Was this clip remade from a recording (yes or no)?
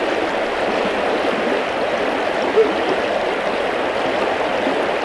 no